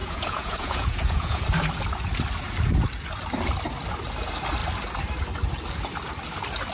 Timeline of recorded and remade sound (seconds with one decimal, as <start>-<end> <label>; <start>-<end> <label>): 0.0-1.4 remade; 1.4-6.7 recorded